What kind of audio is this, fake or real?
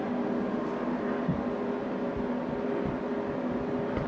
real